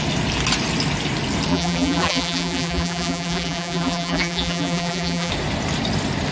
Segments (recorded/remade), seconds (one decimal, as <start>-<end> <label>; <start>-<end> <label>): 0.0-1.5 recorded; 1.5-5.3 remade; 5.3-6.3 recorded